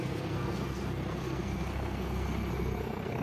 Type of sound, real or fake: fake